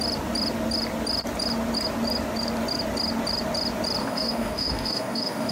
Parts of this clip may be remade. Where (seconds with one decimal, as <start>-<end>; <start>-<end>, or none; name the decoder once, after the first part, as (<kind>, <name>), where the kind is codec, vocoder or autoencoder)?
4.0-5.5 (codec, DAC)

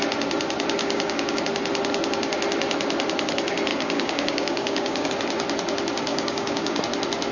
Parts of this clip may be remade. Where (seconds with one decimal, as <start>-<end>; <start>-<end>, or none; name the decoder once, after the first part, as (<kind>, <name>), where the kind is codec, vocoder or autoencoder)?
0.8-1.4 (codec, DAC); 3.7-5.1; 6.1-6.8

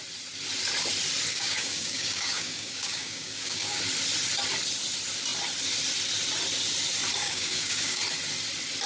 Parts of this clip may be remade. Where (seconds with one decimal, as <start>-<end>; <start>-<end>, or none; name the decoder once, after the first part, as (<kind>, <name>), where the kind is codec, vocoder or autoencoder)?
1.3-3.8 (codec, DAC); 7.2-8.0

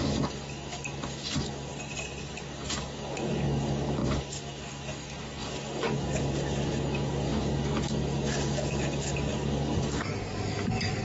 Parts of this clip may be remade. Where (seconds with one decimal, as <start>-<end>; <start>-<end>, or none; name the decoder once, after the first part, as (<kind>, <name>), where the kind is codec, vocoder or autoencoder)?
0.0-1.7 (codec, DAC); 2.2-11.0

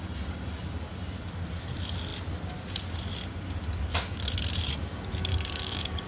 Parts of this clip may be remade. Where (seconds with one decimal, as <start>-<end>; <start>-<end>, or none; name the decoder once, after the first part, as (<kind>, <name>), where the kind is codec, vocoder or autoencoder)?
5.3-6.1 (codec, DAC)

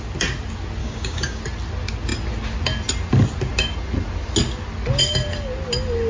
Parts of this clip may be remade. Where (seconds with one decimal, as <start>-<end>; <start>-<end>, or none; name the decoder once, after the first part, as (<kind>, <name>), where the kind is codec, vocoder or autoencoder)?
0.8-1.4 (codec, DAC)

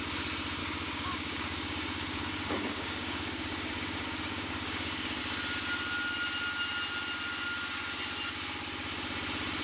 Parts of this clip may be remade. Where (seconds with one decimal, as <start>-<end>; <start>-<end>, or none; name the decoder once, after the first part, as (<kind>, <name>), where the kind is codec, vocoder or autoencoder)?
0.6-5.2 (codec, DAC)